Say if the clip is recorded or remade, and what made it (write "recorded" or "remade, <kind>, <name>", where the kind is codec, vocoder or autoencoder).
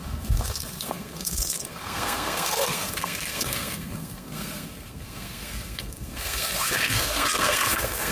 remade, codec, SNAC